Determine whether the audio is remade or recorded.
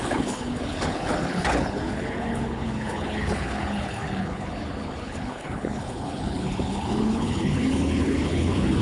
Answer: remade